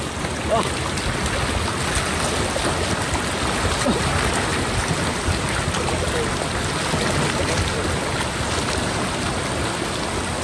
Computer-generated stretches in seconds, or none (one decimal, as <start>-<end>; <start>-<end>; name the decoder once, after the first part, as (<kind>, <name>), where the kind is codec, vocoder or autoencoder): none